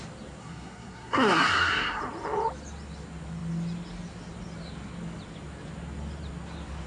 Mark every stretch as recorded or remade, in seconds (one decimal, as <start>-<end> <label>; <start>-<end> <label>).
0.0-0.4 recorded; 0.4-2.0 remade; 2.0-6.9 recorded